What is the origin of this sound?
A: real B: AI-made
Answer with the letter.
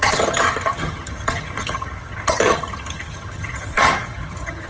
B